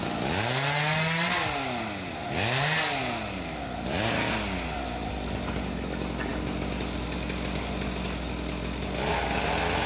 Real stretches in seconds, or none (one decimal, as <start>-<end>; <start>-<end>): 0.0-9.9